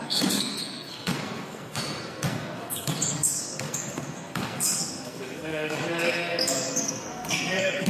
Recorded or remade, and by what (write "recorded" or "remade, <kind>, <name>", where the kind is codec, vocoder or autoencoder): remade, codec, SNAC